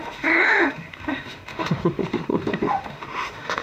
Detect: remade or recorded remade